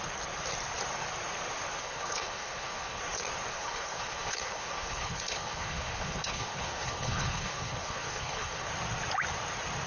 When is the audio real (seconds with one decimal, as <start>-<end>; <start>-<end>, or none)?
0.0-1.8; 3.0-3.5; 8.7-9.9